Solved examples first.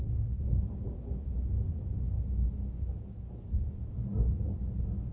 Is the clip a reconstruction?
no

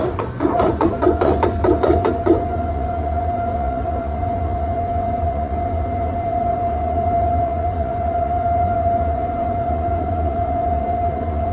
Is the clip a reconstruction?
yes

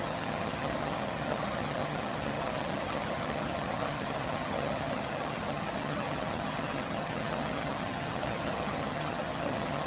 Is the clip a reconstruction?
yes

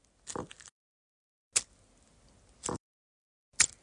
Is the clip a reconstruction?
no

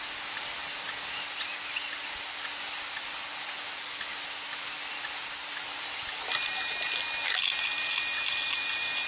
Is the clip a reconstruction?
no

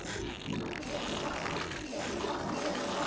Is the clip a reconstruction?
no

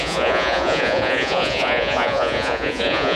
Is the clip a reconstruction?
yes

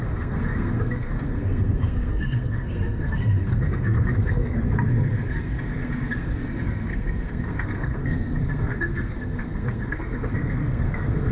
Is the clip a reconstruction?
yes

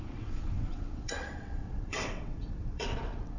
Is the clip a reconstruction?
yes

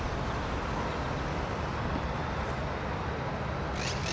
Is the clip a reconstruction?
no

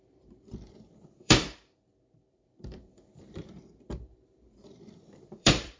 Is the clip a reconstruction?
yes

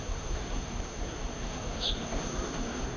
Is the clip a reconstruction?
yes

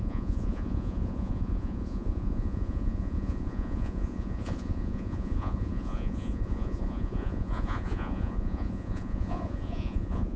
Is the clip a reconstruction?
yes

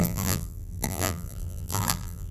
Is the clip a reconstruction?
yes